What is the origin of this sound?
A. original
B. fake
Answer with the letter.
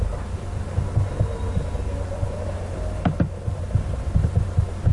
A